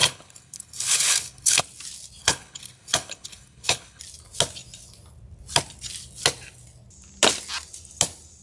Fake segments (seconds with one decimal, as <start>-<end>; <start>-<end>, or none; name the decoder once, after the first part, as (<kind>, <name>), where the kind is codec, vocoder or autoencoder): 0.0-1.6 (codec, HILCodec); 2.2-4.0